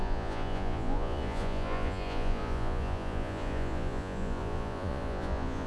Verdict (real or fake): fake